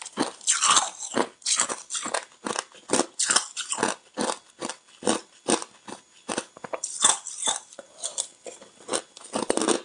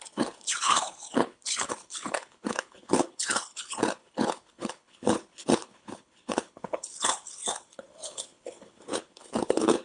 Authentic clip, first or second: first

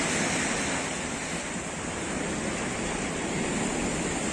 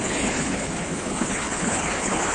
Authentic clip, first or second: first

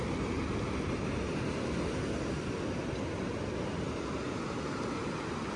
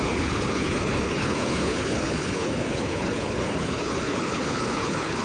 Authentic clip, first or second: first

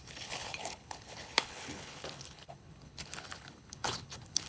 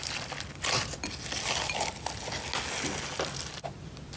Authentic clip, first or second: second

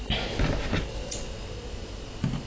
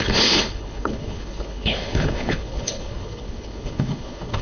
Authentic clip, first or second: first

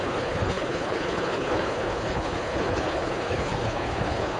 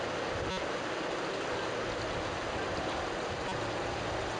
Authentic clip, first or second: second